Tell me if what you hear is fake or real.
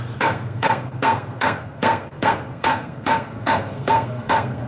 fake